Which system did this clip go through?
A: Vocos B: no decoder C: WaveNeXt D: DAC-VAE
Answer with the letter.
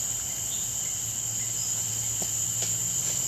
B